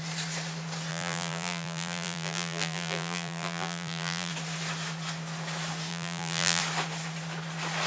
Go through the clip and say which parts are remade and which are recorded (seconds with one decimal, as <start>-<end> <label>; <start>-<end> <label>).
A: 0.0-0.9 recorded; 0.9-4.3 remade; 4.3-5.9 recorded; 5.9-6.6 remade; 6.6-7.9 recorded